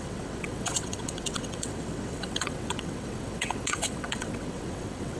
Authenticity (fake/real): fake